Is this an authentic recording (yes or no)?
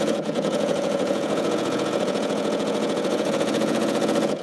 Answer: no